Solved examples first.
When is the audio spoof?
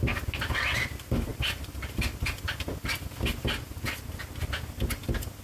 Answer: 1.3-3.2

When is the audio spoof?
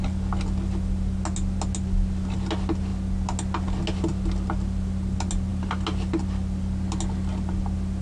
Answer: none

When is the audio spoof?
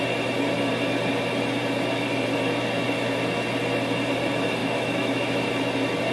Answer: 4.6-5.5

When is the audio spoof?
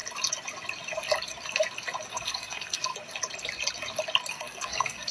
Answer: 2.1-2.9; 4.3-5.1